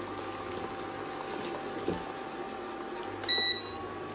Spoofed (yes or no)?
no